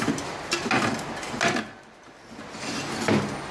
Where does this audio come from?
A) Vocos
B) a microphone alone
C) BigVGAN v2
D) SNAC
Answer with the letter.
B